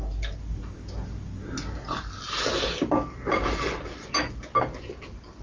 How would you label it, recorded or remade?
recorded